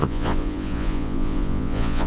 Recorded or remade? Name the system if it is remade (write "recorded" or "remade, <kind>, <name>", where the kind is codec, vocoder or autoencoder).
remade, vocoder, Vocos